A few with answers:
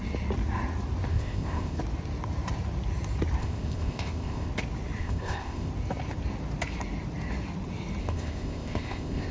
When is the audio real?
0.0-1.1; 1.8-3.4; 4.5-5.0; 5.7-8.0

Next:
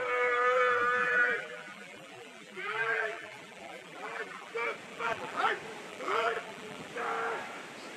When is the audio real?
0.0-1.0; 4.5-4.9; 5.5-5.9; 6.9-8.0

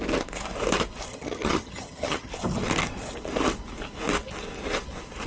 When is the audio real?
0.0-1.1; 2.3-5.3

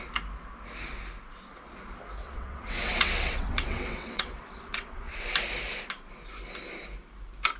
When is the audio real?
0.0-2.2; 5.3-7.6

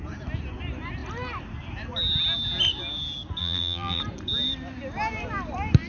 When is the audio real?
0.0-3.4; 4.0-5.9

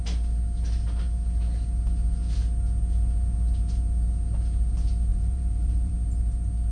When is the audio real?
0.0-5.1; 5.9-6.7

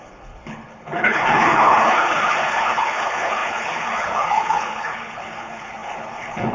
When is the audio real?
none

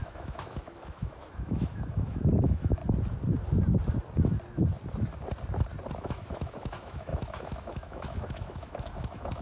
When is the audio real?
2.8-6.0